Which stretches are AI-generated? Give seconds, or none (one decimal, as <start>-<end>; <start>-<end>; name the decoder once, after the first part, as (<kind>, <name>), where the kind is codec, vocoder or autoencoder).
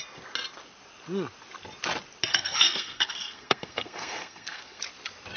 2.3-4.8 (codec, SNAC)